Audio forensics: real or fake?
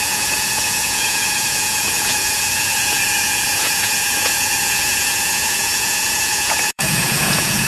fake